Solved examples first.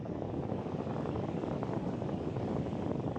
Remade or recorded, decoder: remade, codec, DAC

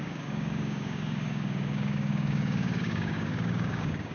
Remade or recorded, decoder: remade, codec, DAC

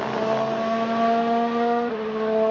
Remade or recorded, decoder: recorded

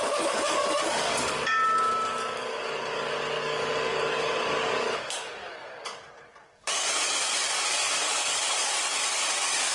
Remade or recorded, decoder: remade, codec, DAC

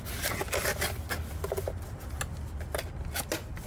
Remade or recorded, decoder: recorded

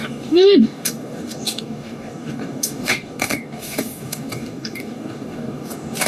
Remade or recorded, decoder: remade, codec, DAC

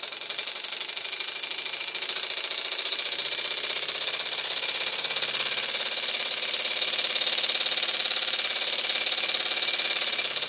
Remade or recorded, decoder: recorded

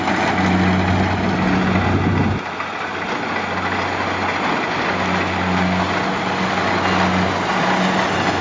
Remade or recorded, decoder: recorded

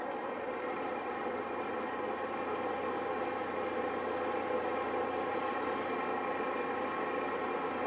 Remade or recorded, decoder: recorded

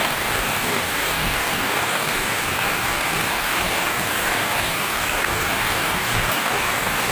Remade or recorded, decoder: remade, codec, DAC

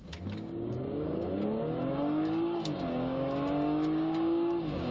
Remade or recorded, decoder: remade, codec, DAC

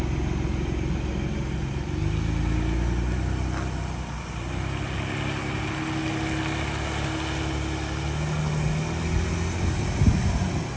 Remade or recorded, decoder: recorded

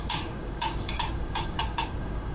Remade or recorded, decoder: remade, codec, DAC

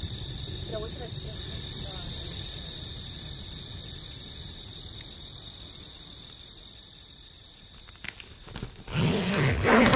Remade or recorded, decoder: recorded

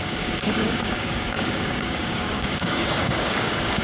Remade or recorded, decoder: remade, codec, DAC